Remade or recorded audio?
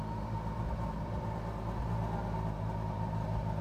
recorded